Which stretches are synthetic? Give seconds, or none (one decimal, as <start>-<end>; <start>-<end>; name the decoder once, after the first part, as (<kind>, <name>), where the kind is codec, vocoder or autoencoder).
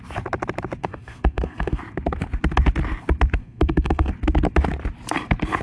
0.8-1.8 (codec, SNAC); 3.4-4.1